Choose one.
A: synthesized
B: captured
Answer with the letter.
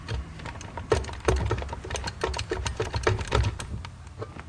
B